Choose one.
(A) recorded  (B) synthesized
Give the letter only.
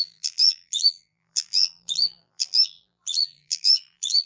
B